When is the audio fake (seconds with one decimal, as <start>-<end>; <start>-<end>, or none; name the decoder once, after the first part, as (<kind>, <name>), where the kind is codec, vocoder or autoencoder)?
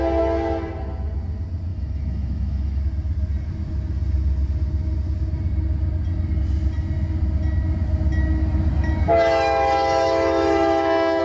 1.7-2.8 (autoencoder, DAC-VAE); 9.1-11.2